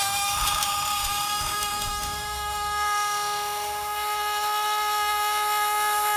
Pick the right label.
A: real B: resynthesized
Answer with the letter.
B